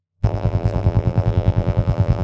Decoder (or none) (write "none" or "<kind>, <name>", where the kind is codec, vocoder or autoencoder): vocoder, BigVGAN v2